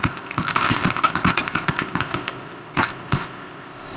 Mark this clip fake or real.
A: fake